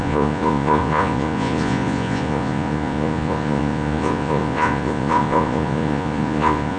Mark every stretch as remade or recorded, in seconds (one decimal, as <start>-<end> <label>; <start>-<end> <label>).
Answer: 0.0-6.8 remade

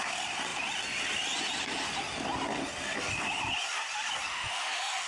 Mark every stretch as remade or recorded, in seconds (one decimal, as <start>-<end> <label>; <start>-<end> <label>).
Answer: 0.0-4.3 recorded; 4.3-5.1 remade

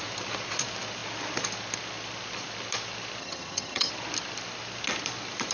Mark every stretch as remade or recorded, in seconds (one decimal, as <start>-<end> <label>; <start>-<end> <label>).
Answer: 0.0-3.2 recorded; 3.2-3.9 remade; 3.9-5.5 recorded